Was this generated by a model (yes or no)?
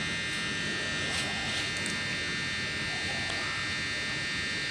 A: no